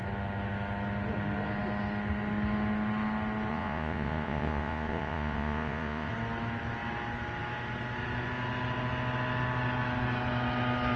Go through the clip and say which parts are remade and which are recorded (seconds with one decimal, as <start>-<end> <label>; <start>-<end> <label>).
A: 0.0-3.5 recorded; 3.5-6.1 remade; 6.1-11.0 recorded

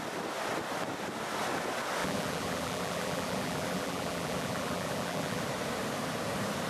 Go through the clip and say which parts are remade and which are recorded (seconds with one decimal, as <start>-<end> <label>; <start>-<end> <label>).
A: 0.0-2.0 recorded; 2.0-5.4 remade; 5.4-6.7 recorded